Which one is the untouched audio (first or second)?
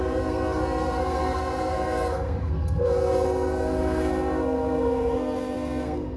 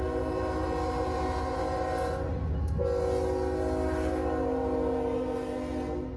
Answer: second